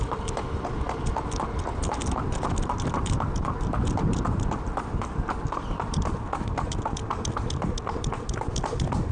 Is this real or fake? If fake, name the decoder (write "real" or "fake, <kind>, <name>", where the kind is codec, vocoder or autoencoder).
real